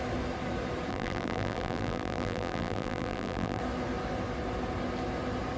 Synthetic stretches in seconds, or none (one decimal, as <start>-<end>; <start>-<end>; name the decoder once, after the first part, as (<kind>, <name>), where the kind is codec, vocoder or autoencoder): 0.9-3.6 (vocoder, BigVGAN v2)